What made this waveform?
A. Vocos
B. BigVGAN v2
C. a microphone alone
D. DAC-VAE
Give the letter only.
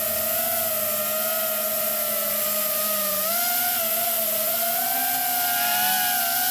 C